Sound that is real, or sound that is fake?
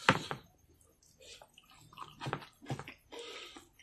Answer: real